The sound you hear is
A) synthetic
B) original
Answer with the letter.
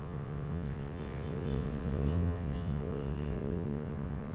A